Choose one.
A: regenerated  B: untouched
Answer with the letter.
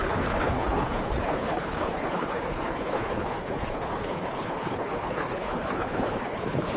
A